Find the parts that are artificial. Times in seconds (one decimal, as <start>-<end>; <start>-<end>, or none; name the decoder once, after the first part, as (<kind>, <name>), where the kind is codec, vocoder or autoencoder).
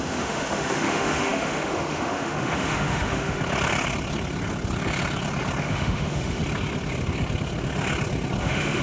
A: 0.0-3.4 (autoencoder, DAC-VAE); 5.6-6.4; 8.4-8.8